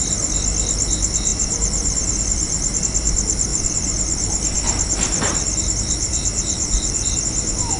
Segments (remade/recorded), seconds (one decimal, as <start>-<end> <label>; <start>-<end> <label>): 0.0-1.3 recorded; 1.3-2.8 remade; 2.8-3.5 recorded; 3.5-7.2 remade; 7.2-7.8 recorded

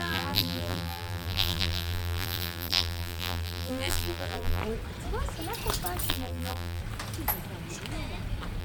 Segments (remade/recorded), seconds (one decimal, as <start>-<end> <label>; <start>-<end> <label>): 0.0-4.6 remade; 4.6-6.1 recorded; 6.1-6.8 remade; 6.8-8.6 recorded